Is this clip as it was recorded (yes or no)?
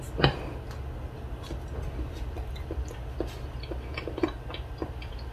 yes